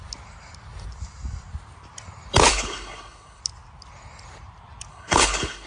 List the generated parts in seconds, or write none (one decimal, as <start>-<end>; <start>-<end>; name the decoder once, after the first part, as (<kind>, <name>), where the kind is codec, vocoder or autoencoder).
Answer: 2.5-3.4 (codec, HILCodec); 4.9-5.7